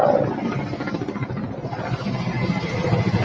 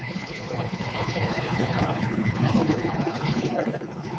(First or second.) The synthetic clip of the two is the second